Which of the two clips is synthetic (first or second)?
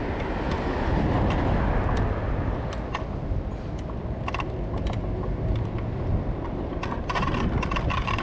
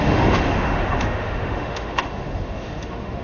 second